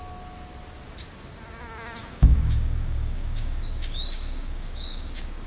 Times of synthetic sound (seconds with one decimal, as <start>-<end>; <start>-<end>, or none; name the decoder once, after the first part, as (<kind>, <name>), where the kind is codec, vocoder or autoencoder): 2.0-5.5 (codec, DAC)